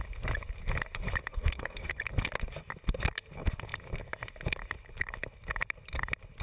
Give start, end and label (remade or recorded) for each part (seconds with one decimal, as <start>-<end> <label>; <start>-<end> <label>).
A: 0.0-1.3 recorded; 1.3-2.0 remade; 2.0-6.4 recorded